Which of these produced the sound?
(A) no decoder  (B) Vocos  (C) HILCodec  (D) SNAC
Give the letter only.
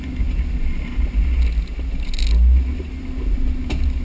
A